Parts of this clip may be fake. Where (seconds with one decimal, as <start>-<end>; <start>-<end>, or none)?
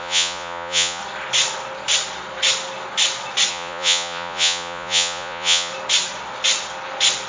0.0-1.0; 3.5-5.7